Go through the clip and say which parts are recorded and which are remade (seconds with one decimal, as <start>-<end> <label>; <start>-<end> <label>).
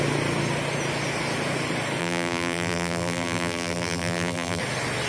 0.0-2.0 recorded; 2.0-4.6 remade; 4.6-5.1 recorded